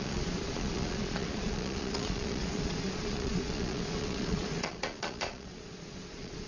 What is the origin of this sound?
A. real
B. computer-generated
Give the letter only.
B